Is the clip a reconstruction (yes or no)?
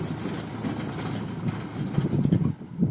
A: no